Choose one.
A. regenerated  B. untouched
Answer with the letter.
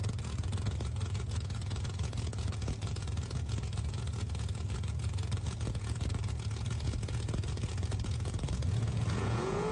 A